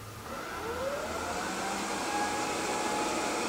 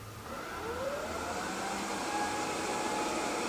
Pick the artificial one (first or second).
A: second